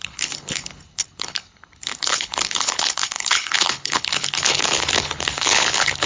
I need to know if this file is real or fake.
fake